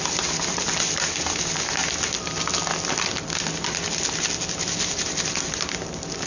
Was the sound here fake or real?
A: real